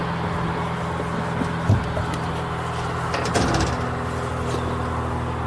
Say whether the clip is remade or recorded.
recorded